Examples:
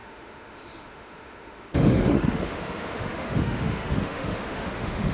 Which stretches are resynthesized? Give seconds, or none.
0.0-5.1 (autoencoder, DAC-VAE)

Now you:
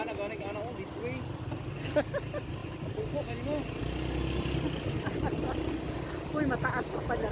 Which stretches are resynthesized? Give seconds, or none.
none

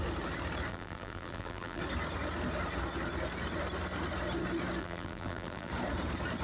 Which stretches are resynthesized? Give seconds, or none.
0.7-1.8 (vocoder, BigVGAN v2); 4.8-5.7

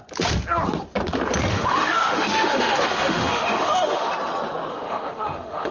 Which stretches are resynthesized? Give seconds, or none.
1.5-4.1 (autoencoder, DAC-VAE); 4.7-5.7

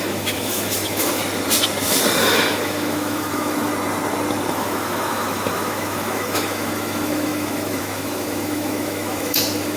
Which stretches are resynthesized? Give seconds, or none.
0.0-1.2 (autoencoder, DAC-VAE); 2.2-3.7; 4.5-9.8

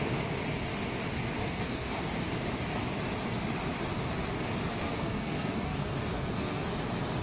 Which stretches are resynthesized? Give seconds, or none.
1.4-2.1 (codec, SNAC); 4.8-6.7

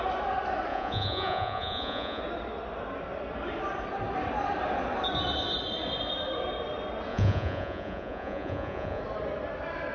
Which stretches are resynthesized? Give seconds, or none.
0.7-2.2 (vocoder, Vocos); 7.1-9.0

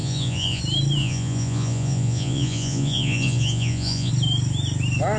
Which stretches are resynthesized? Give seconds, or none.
0.0-0.6 (vocoder, Vocos); 1.0-4.1